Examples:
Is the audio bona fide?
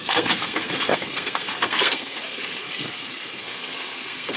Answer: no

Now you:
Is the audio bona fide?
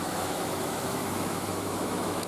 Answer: no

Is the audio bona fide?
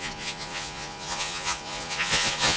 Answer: no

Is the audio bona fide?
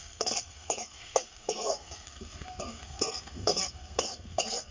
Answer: no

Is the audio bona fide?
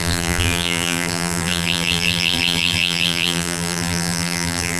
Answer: no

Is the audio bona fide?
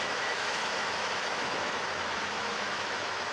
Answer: no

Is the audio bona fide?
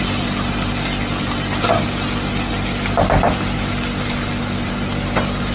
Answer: yes